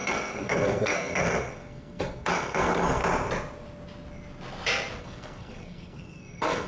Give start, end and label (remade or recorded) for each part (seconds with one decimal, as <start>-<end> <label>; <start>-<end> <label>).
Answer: 0.0-3.0 remade; 3.0-5.0 recorded; 5.0-6.7 remade